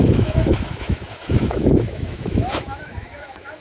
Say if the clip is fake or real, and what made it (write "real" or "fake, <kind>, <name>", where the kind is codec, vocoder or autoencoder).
fake, autoencoder, DAC-VAE